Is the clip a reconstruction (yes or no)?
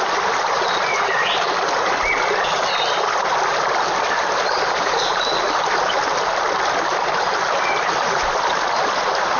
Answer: no